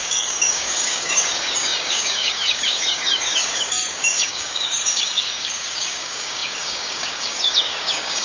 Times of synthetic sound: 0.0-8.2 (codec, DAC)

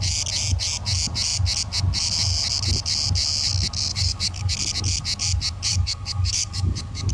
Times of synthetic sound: 3.9-4.5 (codec, DAC); 5.7-7.1

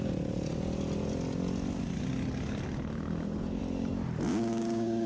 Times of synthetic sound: 4.3-5.1 (codec, DAC)

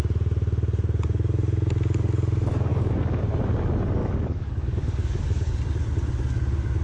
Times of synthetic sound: 2.7-3.2 (codec, DAC); 4.0-5.5

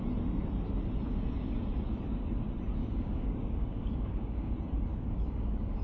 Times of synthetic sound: 2.8-4.5 (codec, DAC); 4.9-5.8